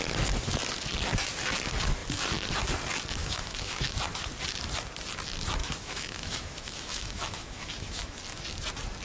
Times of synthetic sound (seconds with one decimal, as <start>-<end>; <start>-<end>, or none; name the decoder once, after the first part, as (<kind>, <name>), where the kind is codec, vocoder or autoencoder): 3.2-4.0 (autoencoder, DAC-VAE); 5.6-8.2